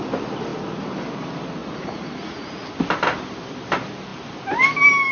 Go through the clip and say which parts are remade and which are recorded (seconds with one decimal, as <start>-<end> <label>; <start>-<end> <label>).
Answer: 0.0-1.6 recorded; 1.6-2.6 remade; 2.6-5.1 recorded